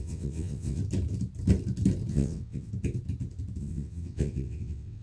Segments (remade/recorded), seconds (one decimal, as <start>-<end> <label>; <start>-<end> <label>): 0.0-0.8 remade; 0.8-2.1 recorded; 2.1-2.7 remade; 2.7-3.6 recorded; 3.6-5.0 remade